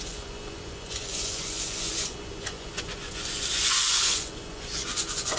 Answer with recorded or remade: remade